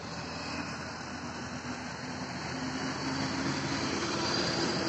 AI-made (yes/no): no